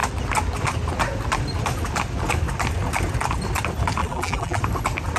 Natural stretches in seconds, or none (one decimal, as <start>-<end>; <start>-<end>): 0.0-4.0; 4.6-5.2